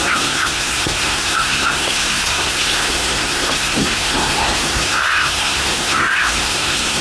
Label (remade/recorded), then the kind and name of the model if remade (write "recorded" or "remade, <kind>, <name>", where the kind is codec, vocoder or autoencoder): remade, codec, SNAC